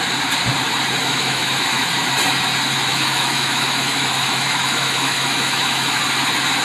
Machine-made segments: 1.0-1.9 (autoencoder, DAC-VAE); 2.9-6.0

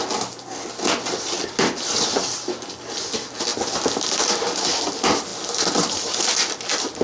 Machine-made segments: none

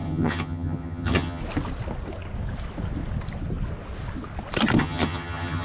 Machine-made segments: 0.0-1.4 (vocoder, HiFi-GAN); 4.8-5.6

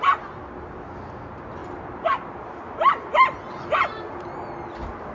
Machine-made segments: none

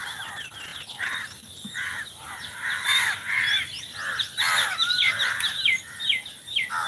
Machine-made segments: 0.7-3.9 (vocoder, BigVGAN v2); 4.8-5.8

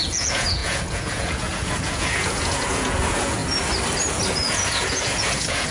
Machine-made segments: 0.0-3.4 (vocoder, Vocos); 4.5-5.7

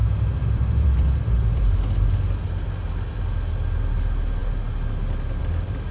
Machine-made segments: 0.0-1.9 (vocoder, BigVGAN v2)